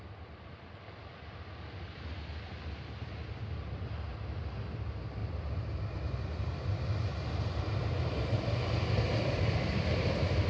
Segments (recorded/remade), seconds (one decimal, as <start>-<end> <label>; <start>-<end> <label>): 0.0-10.5 recorded